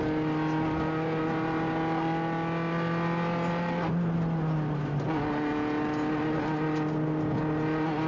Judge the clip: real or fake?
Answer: real